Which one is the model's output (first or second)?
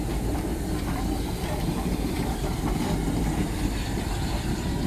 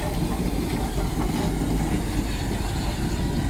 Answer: first